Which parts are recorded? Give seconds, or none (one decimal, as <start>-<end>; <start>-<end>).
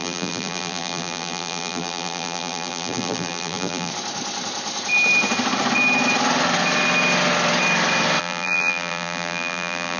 3.9-8.2